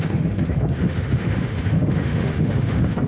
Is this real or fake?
fake